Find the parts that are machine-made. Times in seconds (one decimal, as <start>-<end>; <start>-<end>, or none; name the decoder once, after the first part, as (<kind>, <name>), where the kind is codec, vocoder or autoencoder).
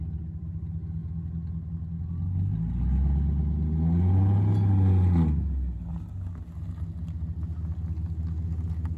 none